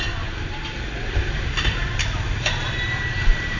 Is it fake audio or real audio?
fake